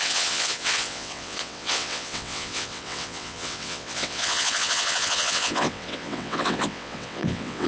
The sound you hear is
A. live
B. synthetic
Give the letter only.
B